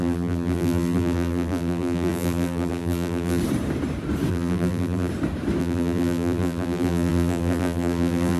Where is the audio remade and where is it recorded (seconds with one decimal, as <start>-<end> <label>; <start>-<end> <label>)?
0.0-3.4 remade; 3.4-4.3 recorded; 4.3-5.1 remade; 5.1-5.6 recorded; 5.6-8.4 remade